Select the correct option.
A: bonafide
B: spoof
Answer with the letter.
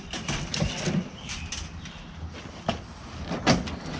A